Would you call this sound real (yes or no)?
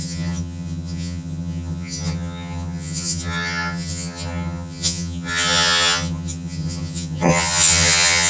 no